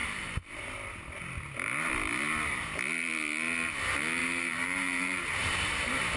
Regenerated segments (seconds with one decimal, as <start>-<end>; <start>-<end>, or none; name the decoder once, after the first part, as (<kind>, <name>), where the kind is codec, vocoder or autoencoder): 0.0-0.6 (vocoder, BigVGAN v2); 4.2-6.2